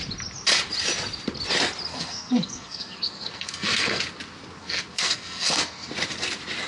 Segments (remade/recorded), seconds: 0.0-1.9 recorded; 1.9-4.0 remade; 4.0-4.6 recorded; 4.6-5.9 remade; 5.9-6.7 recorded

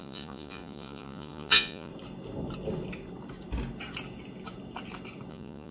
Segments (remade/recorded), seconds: 0.0-1.9 remade; 1.9-5.3 recorded; 5.3-5.7 remade